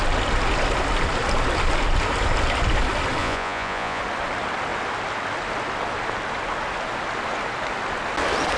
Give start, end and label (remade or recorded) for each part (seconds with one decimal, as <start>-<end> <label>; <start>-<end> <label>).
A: 0.0-3.2 recorded; 3.2-4.0 remade; 4.0-8.6 recorded